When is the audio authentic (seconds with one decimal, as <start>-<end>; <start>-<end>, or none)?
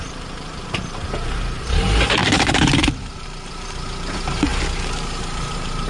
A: 4.5-5.2